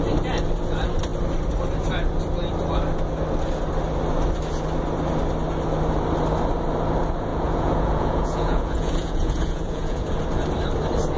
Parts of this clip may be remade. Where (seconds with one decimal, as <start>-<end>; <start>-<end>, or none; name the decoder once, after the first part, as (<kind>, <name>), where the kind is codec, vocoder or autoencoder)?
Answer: 7.3-10.1 (vocoder, Vocos)